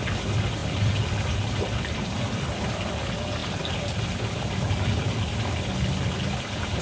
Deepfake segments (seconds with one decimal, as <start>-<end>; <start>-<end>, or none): none